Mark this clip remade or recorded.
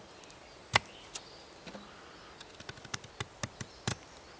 recorded